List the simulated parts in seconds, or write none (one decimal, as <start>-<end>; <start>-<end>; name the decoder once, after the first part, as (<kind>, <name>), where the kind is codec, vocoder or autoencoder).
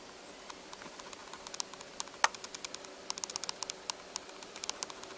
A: none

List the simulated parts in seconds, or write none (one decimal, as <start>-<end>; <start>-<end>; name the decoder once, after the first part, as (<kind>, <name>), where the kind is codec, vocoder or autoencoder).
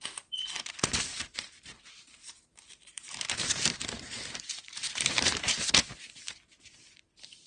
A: 1.1-5.6 (vocoder, BigVGAN v2)